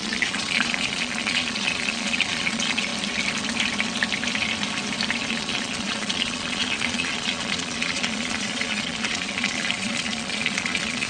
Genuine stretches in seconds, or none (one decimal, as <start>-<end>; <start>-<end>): 2.9-5.3